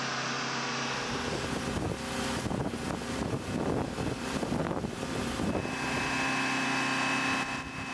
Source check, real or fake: real